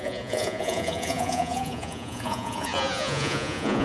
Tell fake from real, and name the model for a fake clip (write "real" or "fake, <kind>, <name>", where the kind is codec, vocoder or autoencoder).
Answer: fake, vocoder, Vocos